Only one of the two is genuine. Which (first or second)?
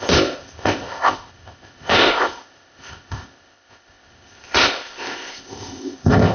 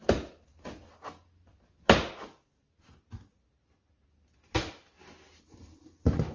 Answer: second